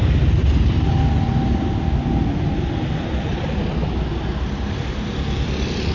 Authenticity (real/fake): real